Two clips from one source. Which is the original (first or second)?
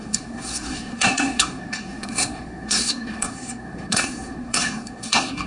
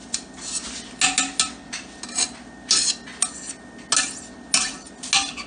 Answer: second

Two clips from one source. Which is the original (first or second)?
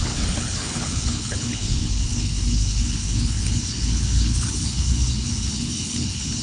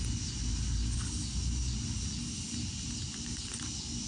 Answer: second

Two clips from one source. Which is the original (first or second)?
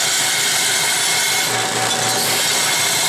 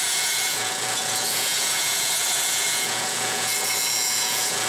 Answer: first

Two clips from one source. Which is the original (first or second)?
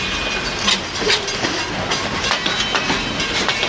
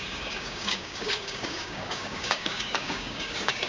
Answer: first